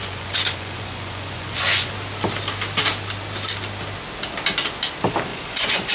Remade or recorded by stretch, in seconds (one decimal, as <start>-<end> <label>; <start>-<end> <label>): 0.0-1.9 remade; 1.9-5.3 recorded; 5.3-5.9 remade